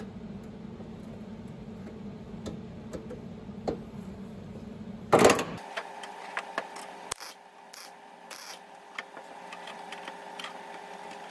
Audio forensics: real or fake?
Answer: real